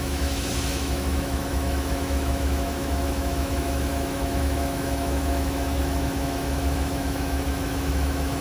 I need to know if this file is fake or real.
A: fake